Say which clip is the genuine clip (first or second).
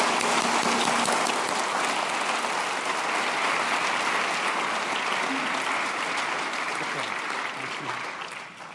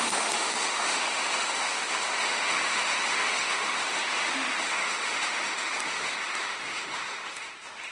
first